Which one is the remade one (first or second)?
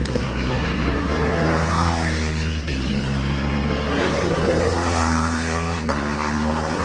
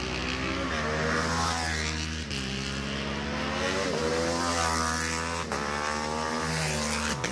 first